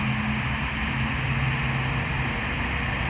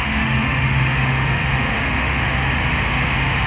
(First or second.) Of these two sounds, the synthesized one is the second